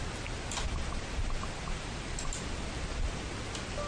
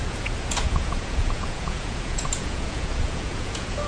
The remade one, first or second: second